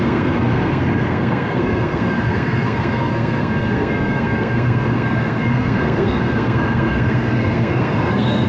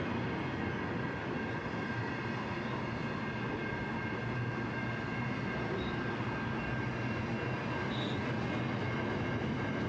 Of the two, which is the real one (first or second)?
second